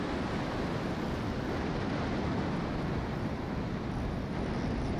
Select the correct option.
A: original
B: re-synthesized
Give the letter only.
A